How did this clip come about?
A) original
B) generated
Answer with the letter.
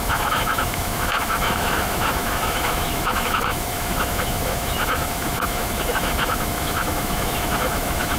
B